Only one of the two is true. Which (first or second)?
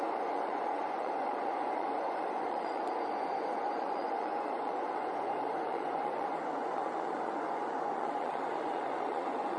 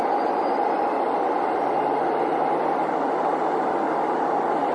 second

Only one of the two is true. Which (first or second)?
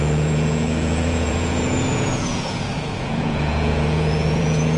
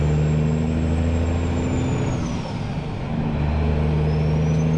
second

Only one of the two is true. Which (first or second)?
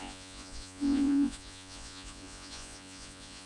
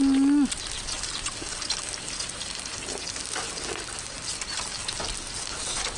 second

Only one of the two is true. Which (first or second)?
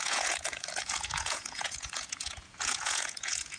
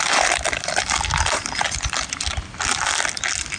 second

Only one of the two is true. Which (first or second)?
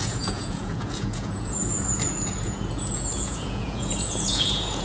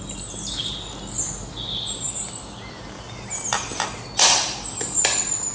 second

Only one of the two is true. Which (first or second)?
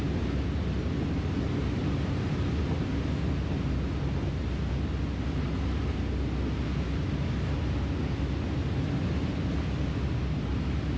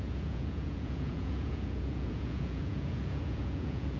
first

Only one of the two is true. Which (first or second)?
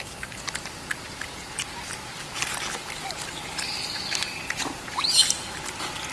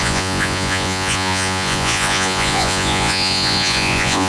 first